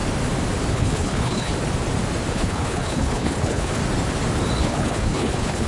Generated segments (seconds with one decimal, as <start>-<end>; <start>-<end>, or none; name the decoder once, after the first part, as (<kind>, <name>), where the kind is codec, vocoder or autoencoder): 0.7-1.5 (codec, HILCodec); 2.3-3.8; 4.6-5.7